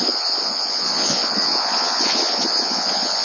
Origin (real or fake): fake